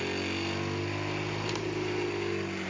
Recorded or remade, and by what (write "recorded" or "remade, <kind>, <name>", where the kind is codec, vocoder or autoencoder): recorded